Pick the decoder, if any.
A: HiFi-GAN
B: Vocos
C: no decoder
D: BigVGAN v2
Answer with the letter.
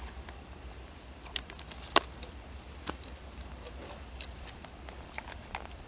C